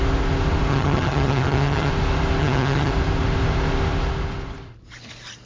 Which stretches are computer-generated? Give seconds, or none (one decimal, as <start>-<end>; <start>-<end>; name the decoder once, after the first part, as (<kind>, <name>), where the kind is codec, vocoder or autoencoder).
0.7-1.9 (vocoder, HiFi-GAN); 2.4-2.9